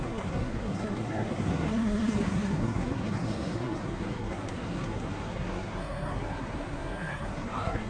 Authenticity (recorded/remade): remade